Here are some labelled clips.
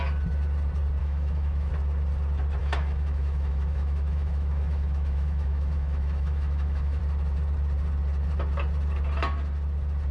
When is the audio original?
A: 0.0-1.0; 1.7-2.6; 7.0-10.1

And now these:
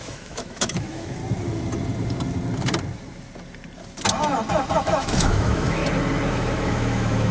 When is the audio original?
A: 1.2-4.8; 5.8-6.3

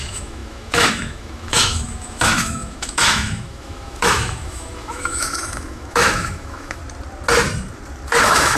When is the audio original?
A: 6.8-8.2

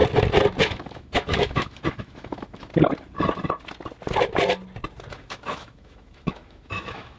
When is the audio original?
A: 0.0-0.6; 2.7-5.1

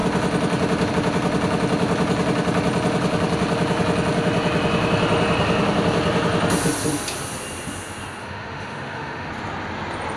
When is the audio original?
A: 0.0-8.2; 9.3-10.2

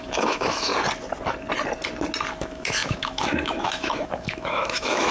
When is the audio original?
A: 0.7-2.3

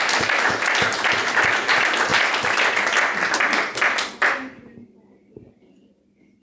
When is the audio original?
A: 0.0-6.4

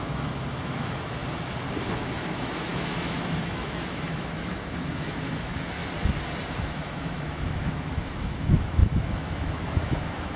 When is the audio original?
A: 1.2-2.0; 5.8-6.6